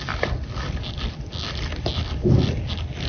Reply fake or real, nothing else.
real